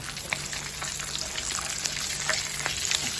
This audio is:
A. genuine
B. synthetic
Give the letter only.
A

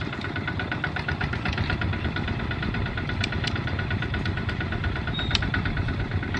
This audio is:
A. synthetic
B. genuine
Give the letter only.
A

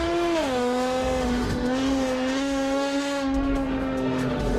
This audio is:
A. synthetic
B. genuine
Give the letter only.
A